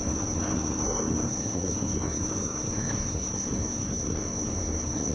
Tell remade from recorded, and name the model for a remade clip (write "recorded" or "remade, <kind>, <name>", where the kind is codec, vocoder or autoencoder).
remade, codec, SNAC